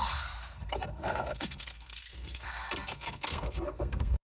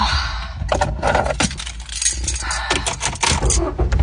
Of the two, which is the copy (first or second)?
first